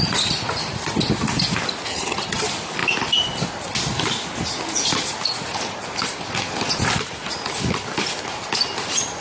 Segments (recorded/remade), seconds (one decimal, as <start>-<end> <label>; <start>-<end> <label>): 0.0-1.9 recorded; 1.9-2.4 remade; 2.4-9.2 recorded